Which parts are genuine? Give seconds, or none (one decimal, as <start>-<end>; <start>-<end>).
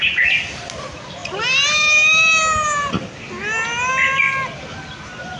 0.0-5.4